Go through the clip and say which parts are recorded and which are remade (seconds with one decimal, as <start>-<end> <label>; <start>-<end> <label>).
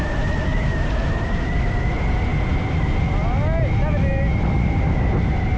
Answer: 0.0-0.5 recorded; 0.5-1.9 remade; 1.9-2.3 recorded; 2.3-3.1 remade; 3.1-5.6 recorded